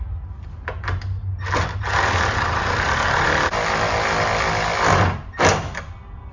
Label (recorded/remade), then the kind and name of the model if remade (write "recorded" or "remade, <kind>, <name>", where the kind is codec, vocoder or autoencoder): recorded